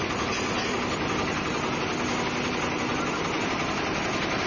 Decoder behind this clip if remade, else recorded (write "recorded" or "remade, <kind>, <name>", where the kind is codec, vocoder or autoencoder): recorded